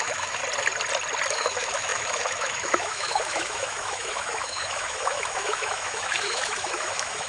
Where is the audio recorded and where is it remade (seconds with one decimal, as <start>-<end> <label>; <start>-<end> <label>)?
0.0-0.4 remade; 0.4-1.3 recorded; 1.3-7.3 remade